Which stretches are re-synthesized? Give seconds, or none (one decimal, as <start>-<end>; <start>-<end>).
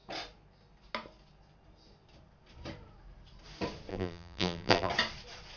3.9-4.9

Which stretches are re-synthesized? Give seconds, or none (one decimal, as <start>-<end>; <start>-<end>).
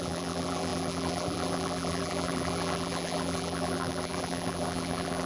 0.0-5.3